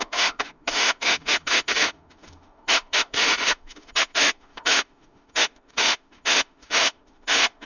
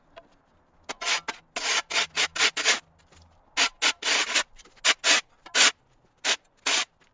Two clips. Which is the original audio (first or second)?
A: second